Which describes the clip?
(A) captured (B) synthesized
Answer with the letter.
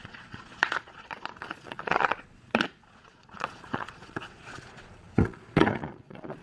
B